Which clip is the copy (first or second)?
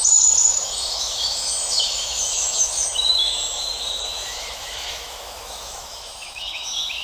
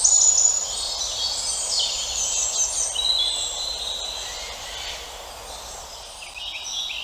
first